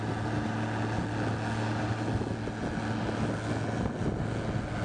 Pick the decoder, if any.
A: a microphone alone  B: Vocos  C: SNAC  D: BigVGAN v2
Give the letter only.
A